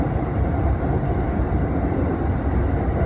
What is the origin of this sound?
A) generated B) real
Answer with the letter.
B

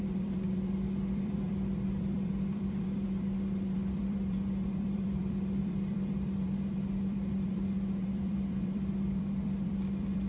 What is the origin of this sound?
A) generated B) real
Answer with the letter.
A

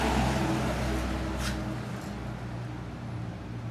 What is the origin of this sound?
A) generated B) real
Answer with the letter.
B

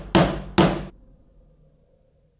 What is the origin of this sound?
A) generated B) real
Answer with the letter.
B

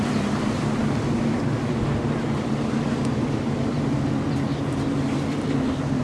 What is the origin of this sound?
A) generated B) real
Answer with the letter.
A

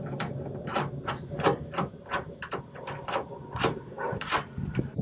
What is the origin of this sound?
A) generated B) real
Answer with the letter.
A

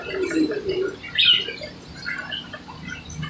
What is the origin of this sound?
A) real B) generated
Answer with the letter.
A